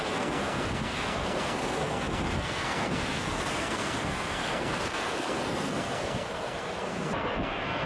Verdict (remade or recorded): remade